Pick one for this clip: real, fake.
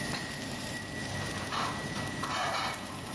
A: fake